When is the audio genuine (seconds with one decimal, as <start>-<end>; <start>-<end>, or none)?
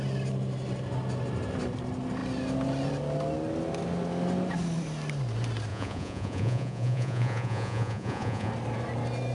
0.0-5.7; 8.5-9.3